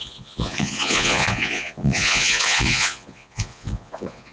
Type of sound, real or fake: fake